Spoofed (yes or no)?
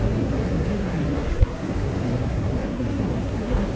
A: yes